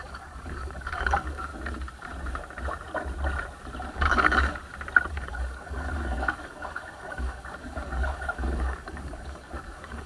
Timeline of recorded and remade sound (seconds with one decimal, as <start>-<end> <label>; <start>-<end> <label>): 0.0-1.5 remade; 1.5-3.9 recorded; 3.9-4.6 remade; 4.6-5.1 recorded; 5.1-10.1 remade